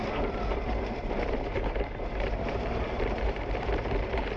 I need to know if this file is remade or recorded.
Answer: remade